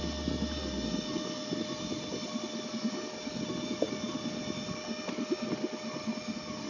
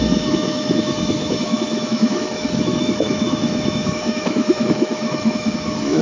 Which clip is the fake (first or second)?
second